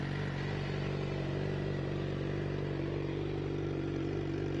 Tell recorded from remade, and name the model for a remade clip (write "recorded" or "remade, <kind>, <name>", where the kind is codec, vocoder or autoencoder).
recorded